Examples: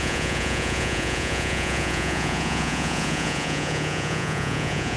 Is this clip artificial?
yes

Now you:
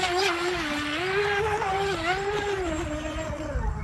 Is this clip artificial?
no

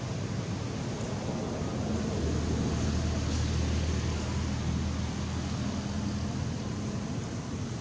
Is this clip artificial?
no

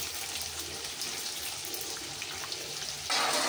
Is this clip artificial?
no